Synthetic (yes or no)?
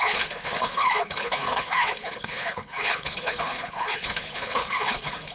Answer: yes